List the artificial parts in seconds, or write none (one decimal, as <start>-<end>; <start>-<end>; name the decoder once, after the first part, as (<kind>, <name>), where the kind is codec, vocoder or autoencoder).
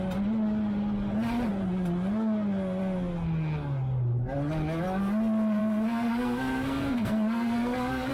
5.6-8.1 (codec, SNAC)